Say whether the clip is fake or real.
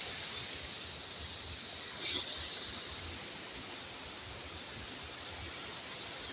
real